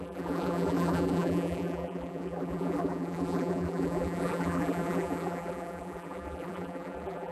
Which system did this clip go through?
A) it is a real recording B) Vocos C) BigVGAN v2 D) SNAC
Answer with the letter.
C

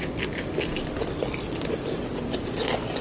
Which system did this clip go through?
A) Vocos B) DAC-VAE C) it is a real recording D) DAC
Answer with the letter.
C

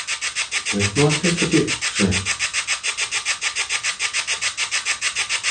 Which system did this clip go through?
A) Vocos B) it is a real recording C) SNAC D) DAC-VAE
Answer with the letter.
B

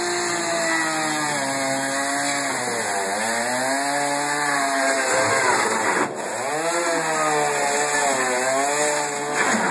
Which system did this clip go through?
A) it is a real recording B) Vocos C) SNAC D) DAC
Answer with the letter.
A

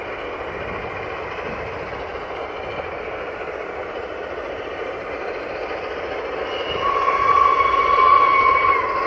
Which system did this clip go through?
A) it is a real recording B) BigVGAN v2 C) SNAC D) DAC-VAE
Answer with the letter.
A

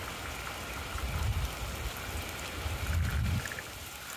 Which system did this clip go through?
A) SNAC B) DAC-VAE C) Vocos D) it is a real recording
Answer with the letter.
D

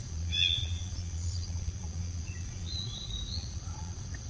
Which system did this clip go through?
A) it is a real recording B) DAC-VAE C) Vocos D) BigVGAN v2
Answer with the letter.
C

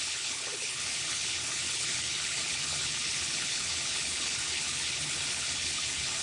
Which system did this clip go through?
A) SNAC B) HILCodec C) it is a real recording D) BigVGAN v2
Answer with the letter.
B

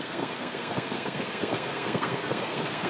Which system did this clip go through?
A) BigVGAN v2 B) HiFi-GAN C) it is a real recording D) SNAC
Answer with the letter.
D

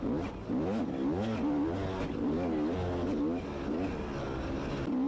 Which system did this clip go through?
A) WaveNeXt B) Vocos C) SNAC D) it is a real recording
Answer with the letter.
D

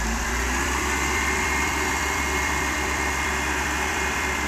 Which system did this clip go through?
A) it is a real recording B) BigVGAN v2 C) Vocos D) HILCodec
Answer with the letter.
B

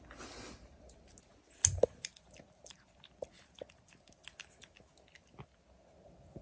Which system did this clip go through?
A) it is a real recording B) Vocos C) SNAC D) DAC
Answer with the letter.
A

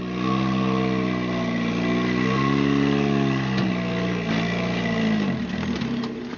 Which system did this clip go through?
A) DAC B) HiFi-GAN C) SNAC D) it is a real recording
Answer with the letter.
D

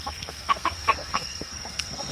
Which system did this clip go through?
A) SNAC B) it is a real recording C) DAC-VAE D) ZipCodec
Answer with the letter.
A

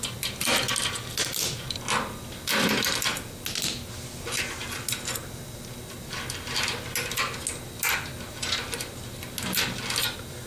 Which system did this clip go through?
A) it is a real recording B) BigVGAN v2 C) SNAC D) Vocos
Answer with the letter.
A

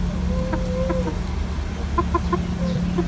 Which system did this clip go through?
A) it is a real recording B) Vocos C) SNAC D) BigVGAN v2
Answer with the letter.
A